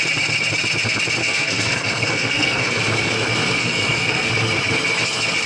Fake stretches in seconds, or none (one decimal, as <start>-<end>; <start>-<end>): 1.2-2.8; 3.6-4.3